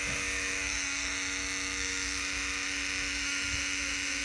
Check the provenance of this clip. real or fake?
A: fake